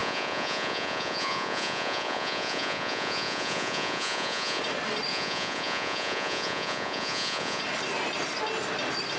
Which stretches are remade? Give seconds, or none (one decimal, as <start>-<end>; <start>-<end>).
0.0-4.6; 5.1-7.6